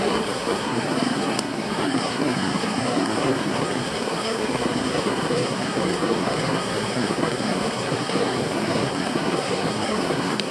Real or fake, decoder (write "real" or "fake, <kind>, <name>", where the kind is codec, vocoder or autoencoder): fake, codec, SNAC